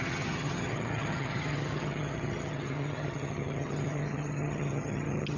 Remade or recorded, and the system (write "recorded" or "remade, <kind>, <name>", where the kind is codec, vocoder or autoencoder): remade, vocoder, HiFi-GAN